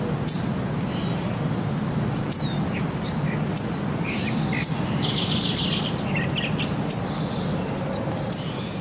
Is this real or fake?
real